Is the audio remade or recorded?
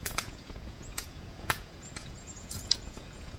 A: remade